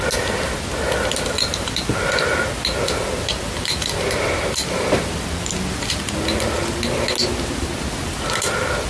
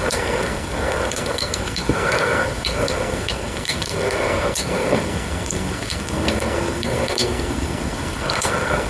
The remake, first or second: second